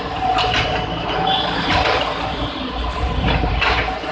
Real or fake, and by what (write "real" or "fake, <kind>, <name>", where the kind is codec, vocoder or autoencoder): fake, vocoder, BigVGAN v2